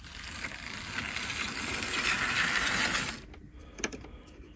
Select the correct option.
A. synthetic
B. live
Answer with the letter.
B